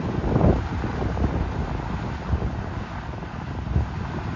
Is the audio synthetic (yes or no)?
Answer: no